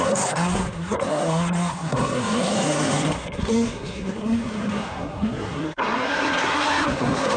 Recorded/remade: remade